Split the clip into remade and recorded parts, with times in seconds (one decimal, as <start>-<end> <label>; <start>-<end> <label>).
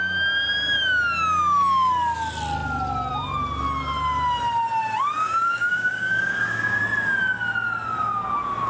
0.0-5.2 recorded; 5.2-6.8 remade; 6.8-8.7 recorded